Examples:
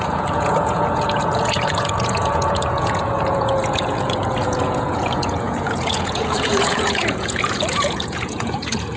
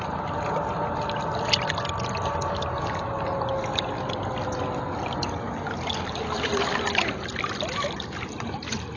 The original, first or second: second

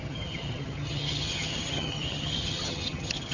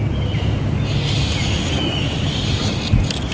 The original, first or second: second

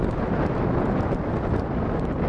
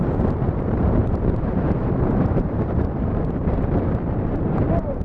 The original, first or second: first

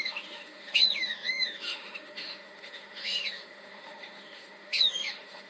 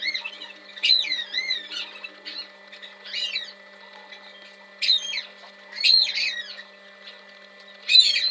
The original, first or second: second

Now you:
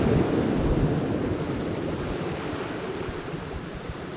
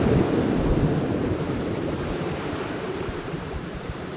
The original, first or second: first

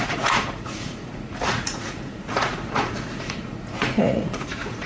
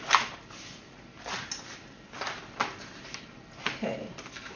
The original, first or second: second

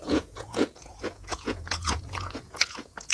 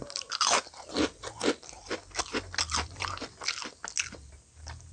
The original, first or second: second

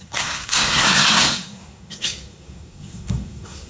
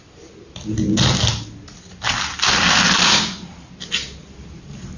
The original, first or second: second